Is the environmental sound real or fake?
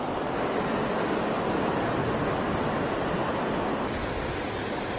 real